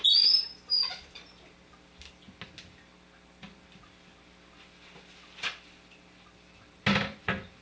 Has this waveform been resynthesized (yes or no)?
no